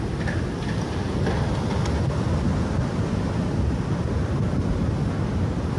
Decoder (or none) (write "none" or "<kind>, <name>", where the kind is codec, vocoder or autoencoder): none